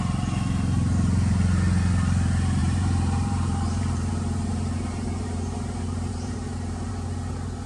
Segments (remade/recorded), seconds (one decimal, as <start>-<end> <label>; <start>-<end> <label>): 0.0-2.6 recorded; 2.6-6.9 remade; 6.9-7.7 recorded